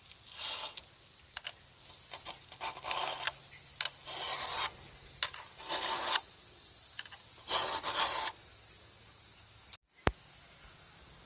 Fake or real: real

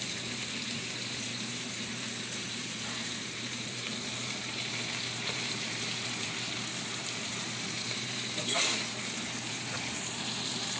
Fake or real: fake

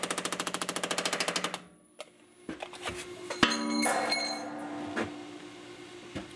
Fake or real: real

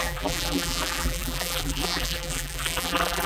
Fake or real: fake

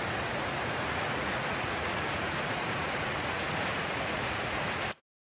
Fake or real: fake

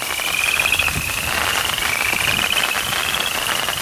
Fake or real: real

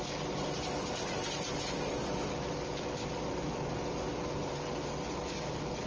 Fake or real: real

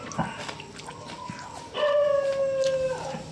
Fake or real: real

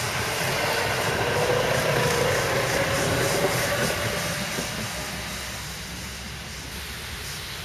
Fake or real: real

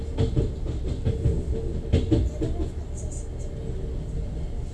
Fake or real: real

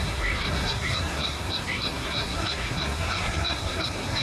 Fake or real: fake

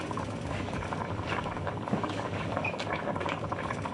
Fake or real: fake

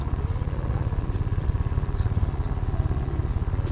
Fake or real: fake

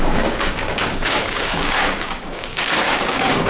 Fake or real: fake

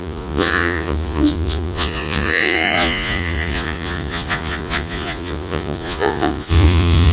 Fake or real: fake